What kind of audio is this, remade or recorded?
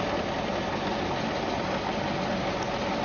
recorded